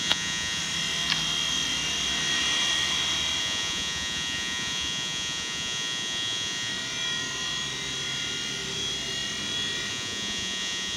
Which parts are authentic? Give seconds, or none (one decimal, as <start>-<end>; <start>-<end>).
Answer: 0.6-3.4; 6.7-9.9